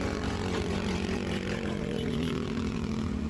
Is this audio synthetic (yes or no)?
yes